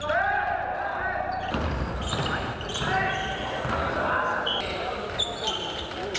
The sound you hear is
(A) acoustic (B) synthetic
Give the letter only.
A